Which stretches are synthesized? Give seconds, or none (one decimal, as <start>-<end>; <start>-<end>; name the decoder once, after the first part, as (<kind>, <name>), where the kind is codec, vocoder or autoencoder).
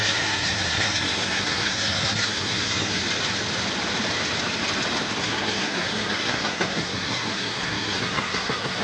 0.0-3.0 (codec, SNAC); 5.2-8.8